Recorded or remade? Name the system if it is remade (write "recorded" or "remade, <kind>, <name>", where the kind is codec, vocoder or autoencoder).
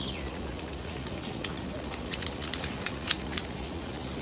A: remade, vocoder, Vocos